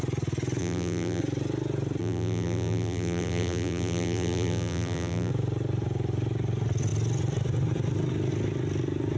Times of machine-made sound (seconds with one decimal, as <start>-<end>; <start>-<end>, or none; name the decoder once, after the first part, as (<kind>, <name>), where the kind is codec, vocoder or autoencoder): 0.6-1.2 (vocoder, BigVGAN v2); 2.0-5.3